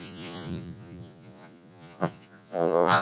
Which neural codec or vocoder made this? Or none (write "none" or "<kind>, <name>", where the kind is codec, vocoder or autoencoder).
vocoder, Vocos